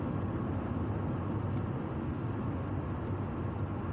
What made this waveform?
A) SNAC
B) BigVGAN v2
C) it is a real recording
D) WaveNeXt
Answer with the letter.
C